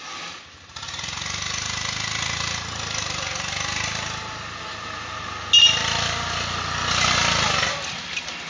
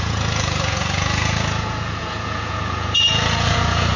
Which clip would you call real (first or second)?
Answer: first